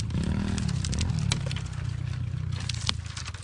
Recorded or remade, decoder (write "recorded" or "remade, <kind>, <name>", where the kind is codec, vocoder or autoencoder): recorded